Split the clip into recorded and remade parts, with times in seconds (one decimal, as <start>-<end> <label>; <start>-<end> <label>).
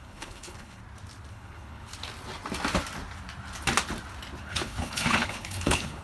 0.0-0.8 remade; 0.8-1.3 recorded; 1.3-1.9 remade; 1.9-4.4 recorded; 4.4-6.0 remade